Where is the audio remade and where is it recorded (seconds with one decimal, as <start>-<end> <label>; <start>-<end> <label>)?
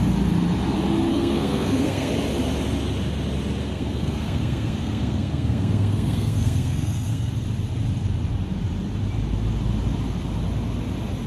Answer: 0.0-1.1 recorded; 1.1-2.1 remade; 2.1-3.6 recorded; 3.6-7.3 remade; 7.3-11.3 recorded